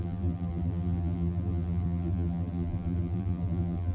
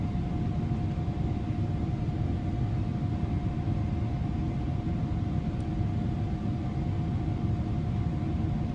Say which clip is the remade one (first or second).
first